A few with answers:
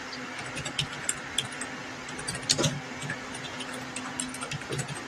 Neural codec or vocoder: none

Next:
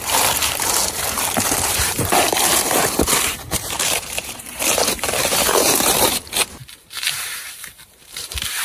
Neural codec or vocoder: vocoder, BigVGAN v2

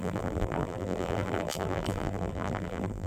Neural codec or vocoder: vocoder, BigVGAN v2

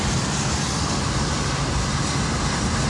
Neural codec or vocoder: vocoder, BigVGAN v2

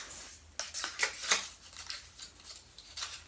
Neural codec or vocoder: none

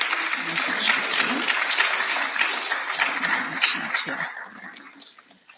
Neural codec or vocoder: none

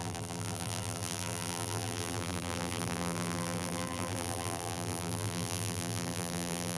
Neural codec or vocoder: vocoder, BigVGAN v2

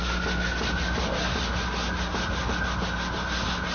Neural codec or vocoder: none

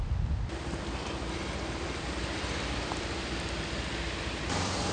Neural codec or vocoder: vocoder, BigVGAN v2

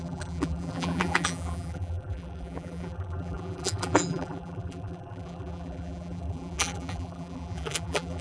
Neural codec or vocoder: vocoder, BigVGAN v2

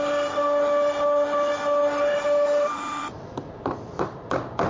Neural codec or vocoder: none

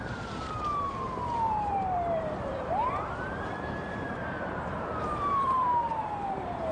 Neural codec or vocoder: vocoder, BigVGAN v2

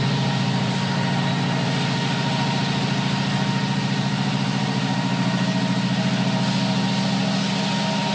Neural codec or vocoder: none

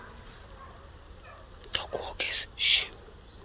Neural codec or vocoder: none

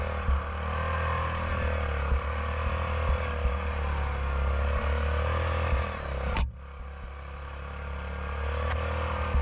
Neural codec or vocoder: none